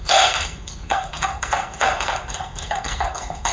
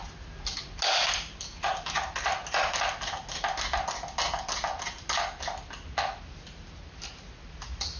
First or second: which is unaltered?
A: second